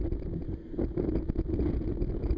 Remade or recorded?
recorded